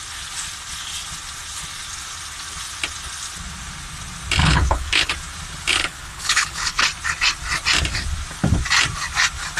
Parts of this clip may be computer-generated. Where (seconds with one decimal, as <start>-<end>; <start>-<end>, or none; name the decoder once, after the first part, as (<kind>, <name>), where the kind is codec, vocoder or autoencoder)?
4.4-5.1 (codec, HILCodec); 5.7-6.8